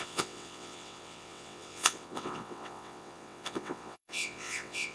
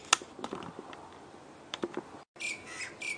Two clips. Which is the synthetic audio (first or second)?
first